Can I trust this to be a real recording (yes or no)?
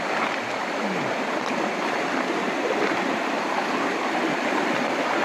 yes